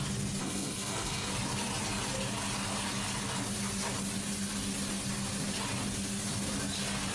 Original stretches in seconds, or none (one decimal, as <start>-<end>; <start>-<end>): 0.0-0.4; 1.3-7.1